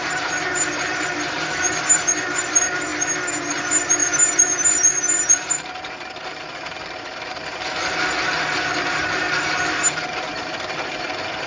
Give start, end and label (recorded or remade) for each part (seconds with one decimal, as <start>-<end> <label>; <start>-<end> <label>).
0.0-2.9 remade; 2.9-3.4 recorded; 3.4-7.7 remade; 7.7-8.5 recorded; 8.5-11.5 remade